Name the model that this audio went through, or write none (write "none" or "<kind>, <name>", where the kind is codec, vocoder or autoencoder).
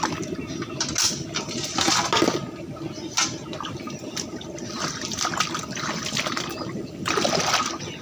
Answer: none